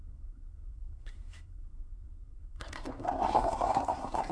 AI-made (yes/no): yes